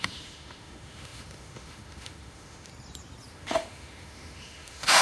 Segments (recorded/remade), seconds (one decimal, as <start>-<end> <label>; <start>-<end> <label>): 0.0-2.7 remade; 2.7-3.3 recorded; 3.3-5.0 remade